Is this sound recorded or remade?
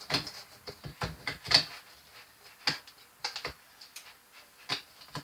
recorded